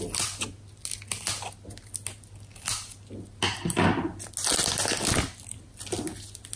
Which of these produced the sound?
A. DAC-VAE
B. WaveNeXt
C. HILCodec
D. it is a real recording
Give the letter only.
D